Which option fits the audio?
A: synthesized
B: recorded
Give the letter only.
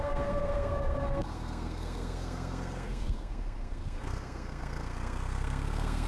A